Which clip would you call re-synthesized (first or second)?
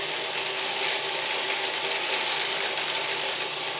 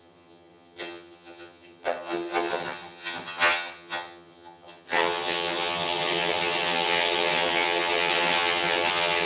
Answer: second